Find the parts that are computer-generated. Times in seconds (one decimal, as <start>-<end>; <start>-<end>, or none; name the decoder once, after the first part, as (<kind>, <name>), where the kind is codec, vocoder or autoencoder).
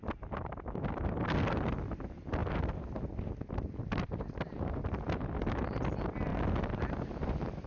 none